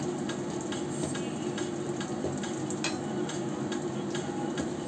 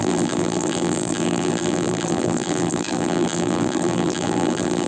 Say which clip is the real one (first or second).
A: first